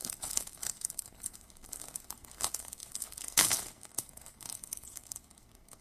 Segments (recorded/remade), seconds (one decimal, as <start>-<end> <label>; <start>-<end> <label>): 0.0-5.8 remade